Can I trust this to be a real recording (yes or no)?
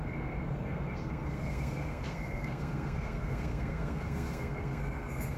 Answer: no